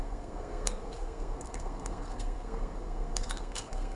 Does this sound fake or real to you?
fake